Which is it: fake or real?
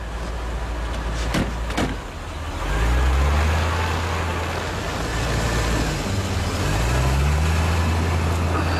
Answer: real